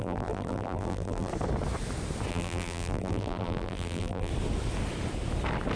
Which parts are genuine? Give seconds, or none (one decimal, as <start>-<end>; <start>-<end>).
1.3-2.3; 4.3-5.8